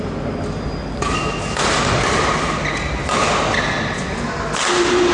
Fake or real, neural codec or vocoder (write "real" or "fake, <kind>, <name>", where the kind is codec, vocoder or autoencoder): real